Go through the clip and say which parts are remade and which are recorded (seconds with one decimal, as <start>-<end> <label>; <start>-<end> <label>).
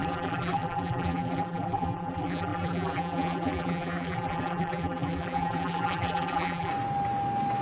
0.0-6.7 remade; 6.7-7.6 recorded